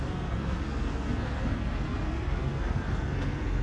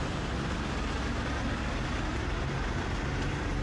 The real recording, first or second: second